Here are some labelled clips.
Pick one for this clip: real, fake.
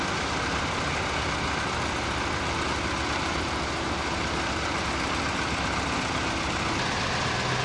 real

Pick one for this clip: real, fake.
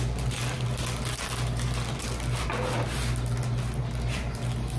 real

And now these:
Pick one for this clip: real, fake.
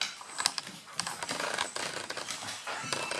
real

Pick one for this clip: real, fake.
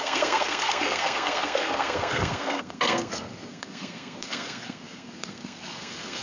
fake